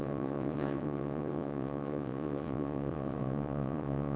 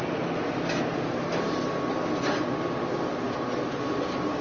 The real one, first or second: second